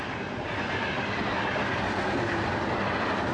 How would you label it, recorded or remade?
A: recorded